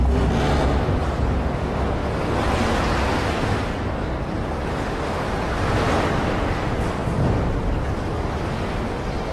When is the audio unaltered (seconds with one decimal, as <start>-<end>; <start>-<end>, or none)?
0.0-1.6; 2.1-3.1; 3.6-4.7; 5.2-9.3